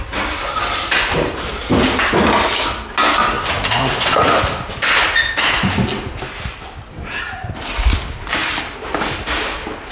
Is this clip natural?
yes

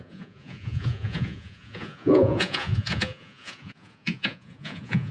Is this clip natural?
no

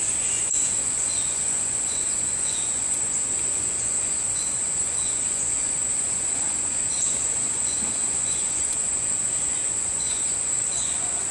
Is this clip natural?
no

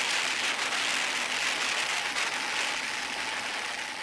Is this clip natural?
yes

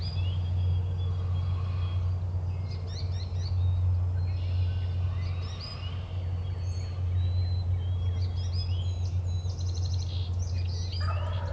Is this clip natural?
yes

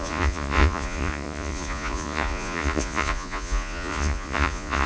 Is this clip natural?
no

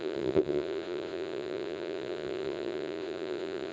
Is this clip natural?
no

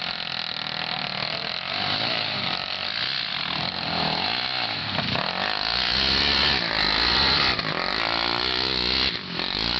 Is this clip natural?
yes